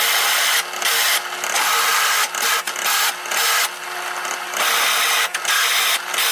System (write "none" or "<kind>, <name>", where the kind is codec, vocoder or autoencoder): none